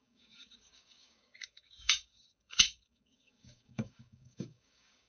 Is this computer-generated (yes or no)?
yes